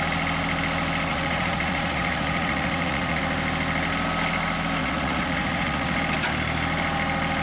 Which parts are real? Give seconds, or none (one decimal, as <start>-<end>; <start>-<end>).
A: 0.0-1.1; 3.2-4.8; 6.0-7.4